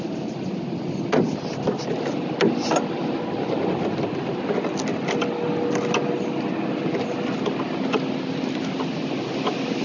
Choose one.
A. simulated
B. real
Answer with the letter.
B